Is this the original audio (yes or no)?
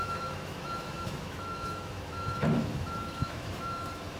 no